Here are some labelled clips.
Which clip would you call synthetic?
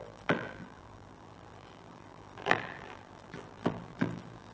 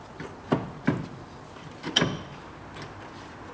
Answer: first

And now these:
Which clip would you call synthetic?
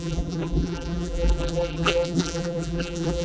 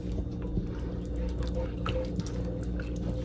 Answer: first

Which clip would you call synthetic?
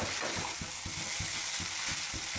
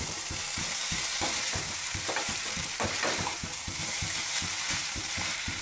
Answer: second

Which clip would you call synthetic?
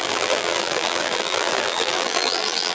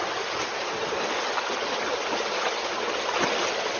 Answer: first